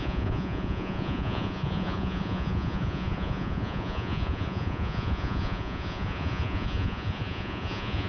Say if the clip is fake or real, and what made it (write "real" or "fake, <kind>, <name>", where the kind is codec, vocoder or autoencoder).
fake, vocoder, Vocos